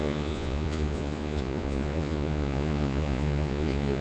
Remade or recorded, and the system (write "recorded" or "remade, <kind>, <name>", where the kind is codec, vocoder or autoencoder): remade, vocoder, Vocos